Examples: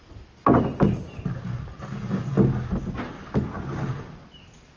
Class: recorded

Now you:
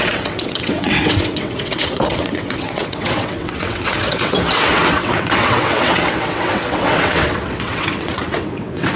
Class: remade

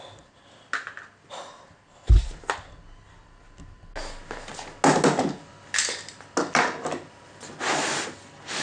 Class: recorded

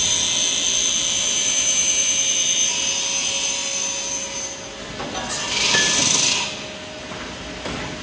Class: recorded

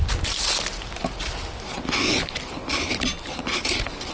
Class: recorded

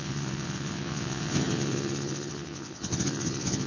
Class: remade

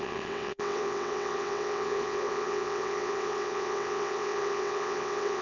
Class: remade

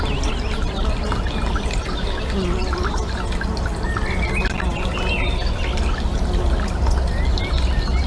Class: recorded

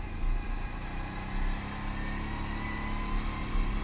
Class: recorded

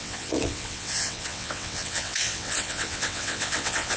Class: remade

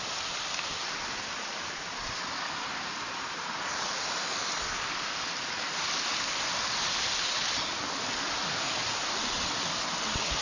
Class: recorded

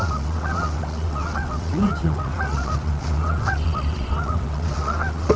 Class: remade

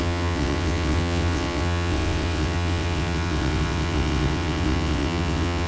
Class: remade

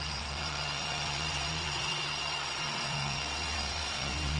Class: remade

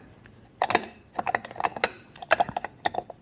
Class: recorded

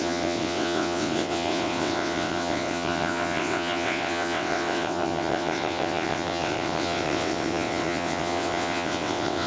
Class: remade